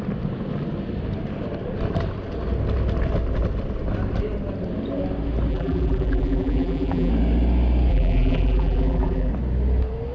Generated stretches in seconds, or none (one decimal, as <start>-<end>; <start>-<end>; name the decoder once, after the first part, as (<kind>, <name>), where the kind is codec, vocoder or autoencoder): 5.5-7.1 (vocoder, BigVGAN v2); 7.9-9.3